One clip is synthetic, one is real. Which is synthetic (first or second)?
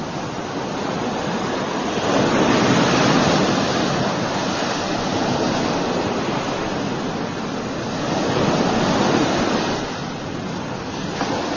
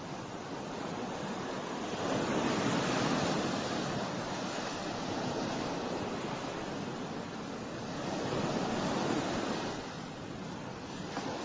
second